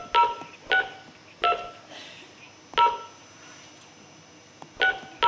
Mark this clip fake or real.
real